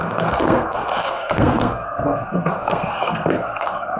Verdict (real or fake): fake